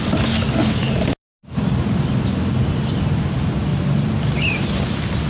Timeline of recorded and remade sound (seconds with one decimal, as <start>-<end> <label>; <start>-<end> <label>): 0.0-5.3 recorded